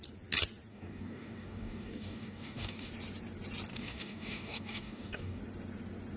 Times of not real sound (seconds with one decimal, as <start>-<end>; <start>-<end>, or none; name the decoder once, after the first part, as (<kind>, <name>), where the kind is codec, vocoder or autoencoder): 0.7-2.9 (codec, DAC); 3.7-5.4